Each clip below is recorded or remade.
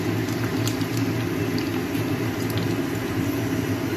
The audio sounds recorded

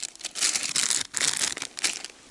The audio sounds recorded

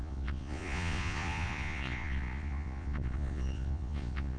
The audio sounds remade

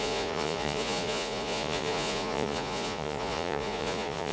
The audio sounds remade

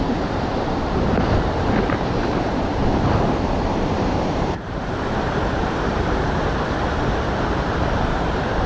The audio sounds remade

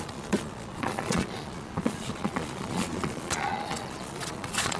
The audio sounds remade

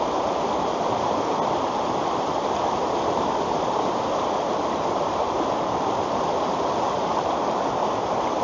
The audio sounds recorded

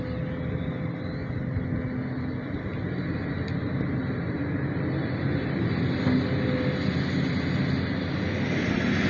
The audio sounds recorded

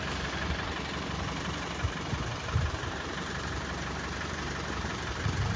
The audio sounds remade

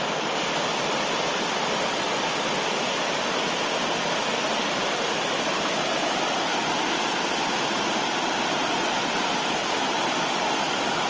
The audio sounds recorded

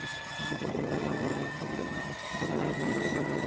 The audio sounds remade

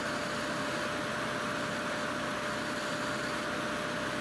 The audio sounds recorded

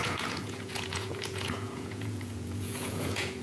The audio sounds remade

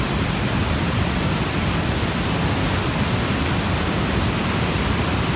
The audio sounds recorded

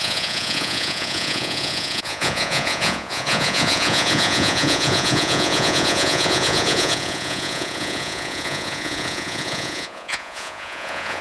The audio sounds remade